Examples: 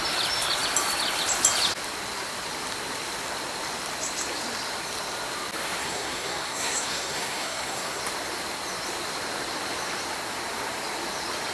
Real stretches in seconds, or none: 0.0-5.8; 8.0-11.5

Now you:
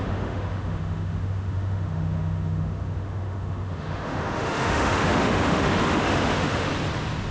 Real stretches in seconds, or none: 6.7-7.3